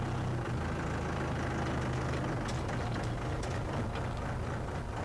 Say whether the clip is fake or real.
real